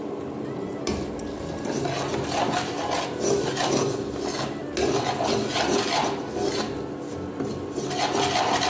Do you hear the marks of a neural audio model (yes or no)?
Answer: no